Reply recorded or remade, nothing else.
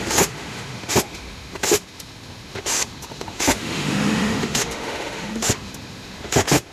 remade